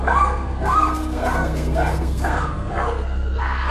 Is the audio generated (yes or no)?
yes